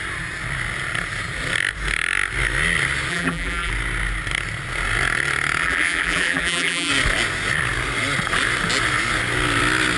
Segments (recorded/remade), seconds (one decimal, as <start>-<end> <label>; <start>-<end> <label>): 0.0-3.1 recorded; 3.1-3.7 remade; 3.7-5.6 recorded; 5.6-6.9 remade; 6.9-10.0 recorded